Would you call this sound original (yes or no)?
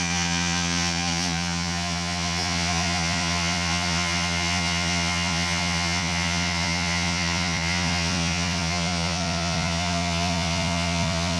no